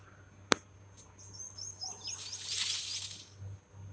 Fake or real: real